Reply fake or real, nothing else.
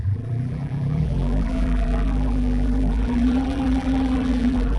fake